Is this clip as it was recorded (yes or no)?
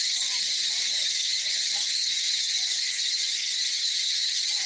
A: no